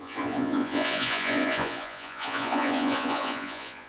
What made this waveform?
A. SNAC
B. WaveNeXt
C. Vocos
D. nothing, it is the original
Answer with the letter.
C